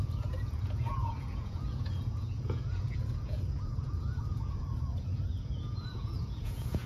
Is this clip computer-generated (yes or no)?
yes